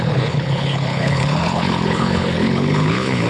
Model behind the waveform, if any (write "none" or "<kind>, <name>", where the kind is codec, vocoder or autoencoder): codec, HILCodec